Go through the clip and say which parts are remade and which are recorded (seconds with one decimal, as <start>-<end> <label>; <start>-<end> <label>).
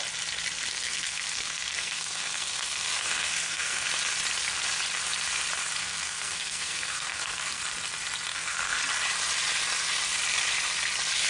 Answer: 0.0-0.7 recorded; 0.7-3.9 remade; 3.9-5.8 recorded; 5.8-7.6 remade; 7.6-8.3 recorded; 8.3-8.8 remade; 8.8-11.3 recorded